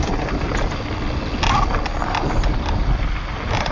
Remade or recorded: recorded